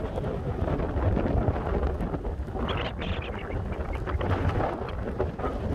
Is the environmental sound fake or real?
real